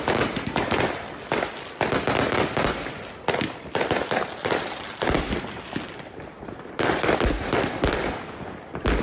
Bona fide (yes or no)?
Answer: no